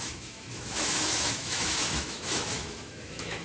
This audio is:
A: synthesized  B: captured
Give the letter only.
A